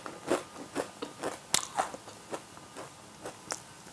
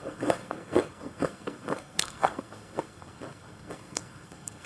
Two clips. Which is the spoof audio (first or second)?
second